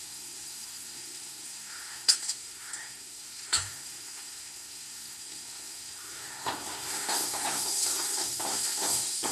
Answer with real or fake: fake